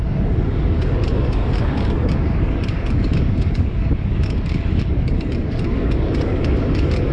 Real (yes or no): no